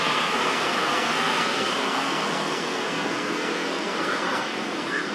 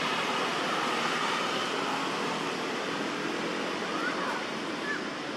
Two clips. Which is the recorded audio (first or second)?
second